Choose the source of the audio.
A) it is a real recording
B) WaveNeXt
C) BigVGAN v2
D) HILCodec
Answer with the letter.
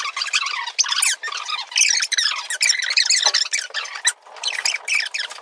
A